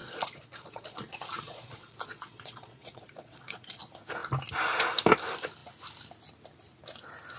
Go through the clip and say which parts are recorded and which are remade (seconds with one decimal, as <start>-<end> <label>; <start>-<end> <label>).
0.0-3.8 remade; 3.8-7.4 recorded